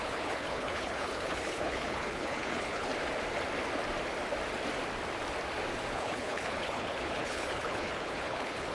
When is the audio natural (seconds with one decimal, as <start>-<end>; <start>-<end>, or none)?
2.9-5.9

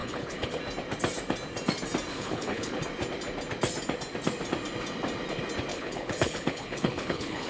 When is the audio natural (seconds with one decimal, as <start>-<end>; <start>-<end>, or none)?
0.6-2.1; 2.8-5.7

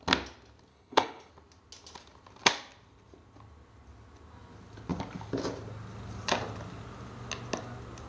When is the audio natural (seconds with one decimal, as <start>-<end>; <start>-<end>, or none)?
0.0-0.7; 1.3-8.1

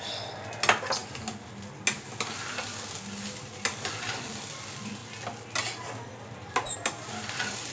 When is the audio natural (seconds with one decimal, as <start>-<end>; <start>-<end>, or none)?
0.0-7.7

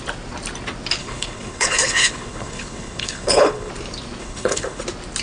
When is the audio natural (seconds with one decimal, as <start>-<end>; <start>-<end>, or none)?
0.0-1.0; 3.7-4.2; 4.8-5.2